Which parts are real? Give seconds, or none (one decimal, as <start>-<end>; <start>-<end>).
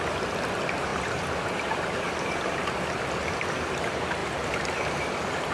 0.0-5.5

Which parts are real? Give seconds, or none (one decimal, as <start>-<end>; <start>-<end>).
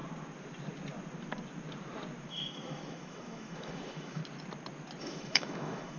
0.0-2.3; 4.2-5.0